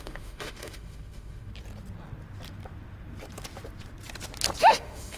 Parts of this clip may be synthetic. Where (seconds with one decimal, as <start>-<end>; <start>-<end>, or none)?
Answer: 0.0-1.5; 4.6-5.2